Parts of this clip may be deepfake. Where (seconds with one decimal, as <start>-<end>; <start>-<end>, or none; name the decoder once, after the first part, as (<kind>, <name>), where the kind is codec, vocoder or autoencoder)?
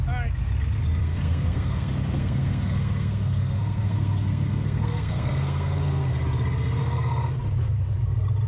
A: 1.0-6.1 (codec, SNAC); 6.8-7.4